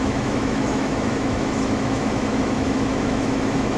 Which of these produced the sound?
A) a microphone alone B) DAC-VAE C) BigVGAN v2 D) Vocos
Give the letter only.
B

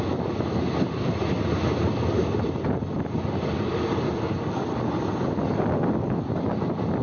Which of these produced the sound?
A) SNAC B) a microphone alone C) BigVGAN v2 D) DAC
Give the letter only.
B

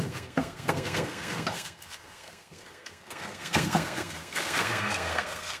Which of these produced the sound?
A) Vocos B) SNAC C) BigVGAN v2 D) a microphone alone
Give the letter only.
B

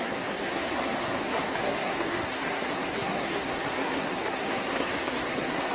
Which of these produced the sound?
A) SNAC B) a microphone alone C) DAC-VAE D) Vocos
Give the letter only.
A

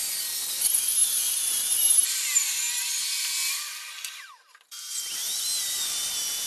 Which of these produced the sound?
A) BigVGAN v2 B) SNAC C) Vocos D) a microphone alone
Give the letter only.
D